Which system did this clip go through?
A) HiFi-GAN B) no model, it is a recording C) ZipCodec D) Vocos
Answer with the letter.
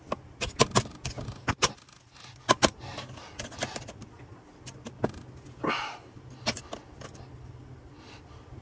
B